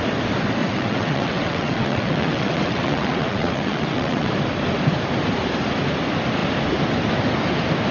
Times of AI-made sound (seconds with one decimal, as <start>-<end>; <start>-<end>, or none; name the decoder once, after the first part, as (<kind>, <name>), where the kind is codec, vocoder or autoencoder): 0.6-4.3 (vocoder, WaveNeXt)